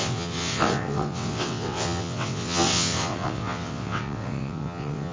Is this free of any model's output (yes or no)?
no